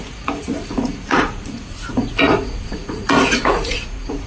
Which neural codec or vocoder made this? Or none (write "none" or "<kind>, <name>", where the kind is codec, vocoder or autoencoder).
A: vocoder, Vocos